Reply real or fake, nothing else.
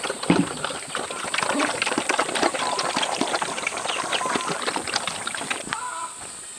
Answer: fake